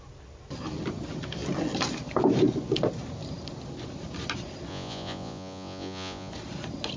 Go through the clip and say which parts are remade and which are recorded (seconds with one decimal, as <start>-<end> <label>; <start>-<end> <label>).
0.0-4.7 recorded; 4.7-6.3 remade; 6.3-7.0 recorded